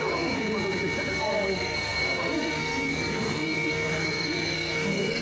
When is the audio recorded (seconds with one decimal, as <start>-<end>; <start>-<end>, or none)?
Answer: 0.4-1.1